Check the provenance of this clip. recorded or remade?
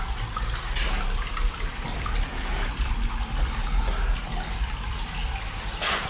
recorded